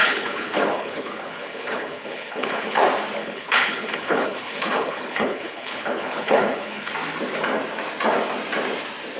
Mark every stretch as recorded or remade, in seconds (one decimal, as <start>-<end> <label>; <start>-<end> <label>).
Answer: 0.0-2.8 remade; 2.8-3.2 recorded; 3.2-6.9 remade; 6.9-9.2 recorded